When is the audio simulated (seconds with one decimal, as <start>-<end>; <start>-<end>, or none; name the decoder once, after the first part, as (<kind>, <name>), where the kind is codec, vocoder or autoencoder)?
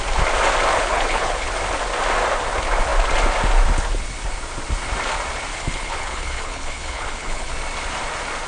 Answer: 0.7-1.5 (codec, HILCodec); 5.5-7.5